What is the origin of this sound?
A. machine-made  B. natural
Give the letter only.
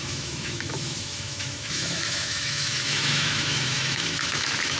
A